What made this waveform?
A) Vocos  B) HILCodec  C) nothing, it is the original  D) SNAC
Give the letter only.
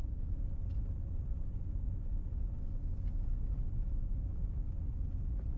C